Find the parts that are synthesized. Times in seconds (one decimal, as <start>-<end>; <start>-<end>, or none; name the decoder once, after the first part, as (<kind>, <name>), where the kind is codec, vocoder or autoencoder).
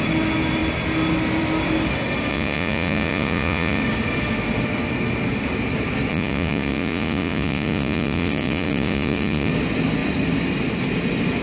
2.3-3.8 (vocoder, Vocos); 6.1-9.5